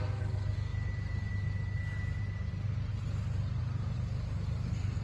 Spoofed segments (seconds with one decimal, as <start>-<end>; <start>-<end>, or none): none

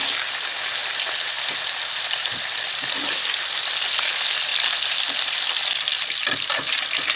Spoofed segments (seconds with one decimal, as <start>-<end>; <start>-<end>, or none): none

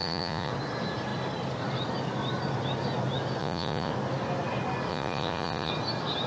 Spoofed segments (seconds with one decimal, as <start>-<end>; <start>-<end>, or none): 0.0-0.5; 3.4-3.9; 4.9-5.7

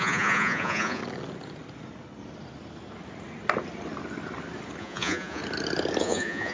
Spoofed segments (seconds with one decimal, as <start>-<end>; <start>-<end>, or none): 0.0-1.0; 4.8-5.4; 6.0-6.5